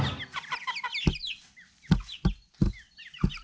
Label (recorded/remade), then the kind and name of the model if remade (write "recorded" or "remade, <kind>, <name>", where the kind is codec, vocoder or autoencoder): recorded